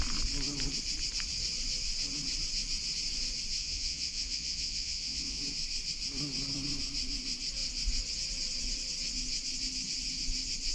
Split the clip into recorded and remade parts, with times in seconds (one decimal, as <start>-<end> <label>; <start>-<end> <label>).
0.0-3.6 recorded; 3.6-5.4 remade; 5.4-10.7 recorded

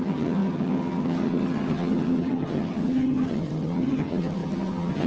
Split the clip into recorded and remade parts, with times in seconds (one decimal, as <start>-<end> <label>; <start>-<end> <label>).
0.0-5.1 remade